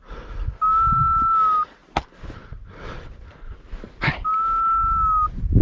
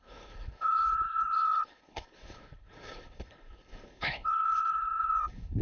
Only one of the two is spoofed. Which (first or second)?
second